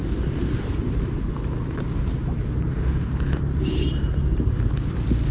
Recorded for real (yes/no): no